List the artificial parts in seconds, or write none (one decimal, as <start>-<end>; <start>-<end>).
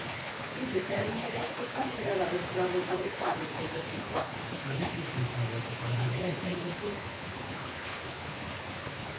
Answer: 0.0-2.1; 2.9-5.2; 5.7-9.2